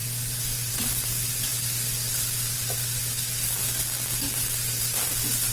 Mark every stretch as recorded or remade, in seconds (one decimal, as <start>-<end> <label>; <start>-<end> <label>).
0.0-5.5 recorded